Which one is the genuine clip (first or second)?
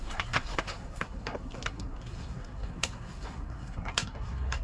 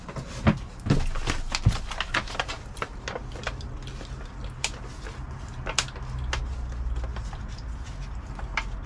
second